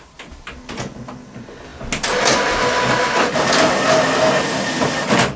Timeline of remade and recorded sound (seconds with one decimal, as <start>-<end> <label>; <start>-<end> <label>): 0.0-5.4 recorded